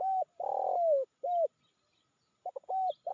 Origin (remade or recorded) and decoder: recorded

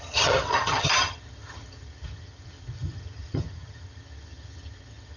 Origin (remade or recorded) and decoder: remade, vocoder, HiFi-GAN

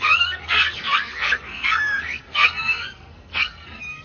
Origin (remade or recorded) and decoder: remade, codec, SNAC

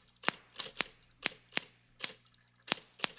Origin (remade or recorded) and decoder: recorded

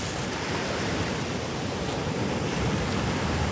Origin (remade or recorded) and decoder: recorded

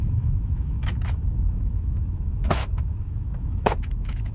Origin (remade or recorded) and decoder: remade, autoencoder, DAC-VAE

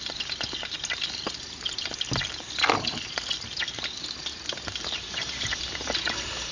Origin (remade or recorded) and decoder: recorded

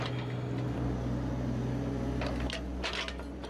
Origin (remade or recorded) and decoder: recorded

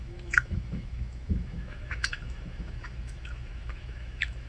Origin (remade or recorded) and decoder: remade, autoencoder, DAC-VAE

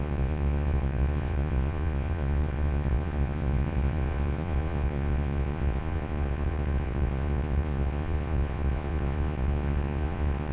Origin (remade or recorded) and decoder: remade, vocoder, Vocos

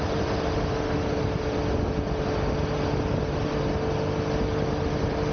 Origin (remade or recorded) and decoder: recorded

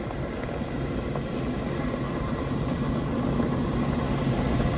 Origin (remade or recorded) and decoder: recorded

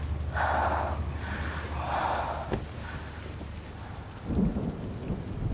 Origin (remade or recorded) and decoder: recorded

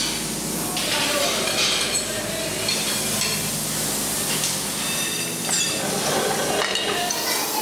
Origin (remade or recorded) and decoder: recorded